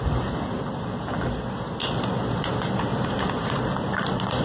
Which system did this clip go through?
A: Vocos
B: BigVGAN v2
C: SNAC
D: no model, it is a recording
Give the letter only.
D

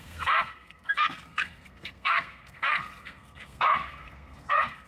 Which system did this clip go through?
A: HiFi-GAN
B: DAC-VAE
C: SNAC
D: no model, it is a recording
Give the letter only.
C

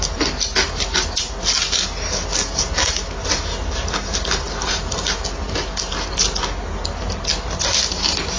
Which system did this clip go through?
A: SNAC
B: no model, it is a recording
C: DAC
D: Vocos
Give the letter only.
B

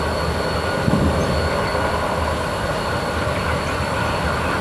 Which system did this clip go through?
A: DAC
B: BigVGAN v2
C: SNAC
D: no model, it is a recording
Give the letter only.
D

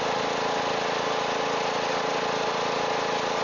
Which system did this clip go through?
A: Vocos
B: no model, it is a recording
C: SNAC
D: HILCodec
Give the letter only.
B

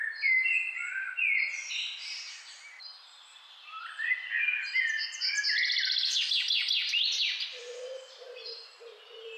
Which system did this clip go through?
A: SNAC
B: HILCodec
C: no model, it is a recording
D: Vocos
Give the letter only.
C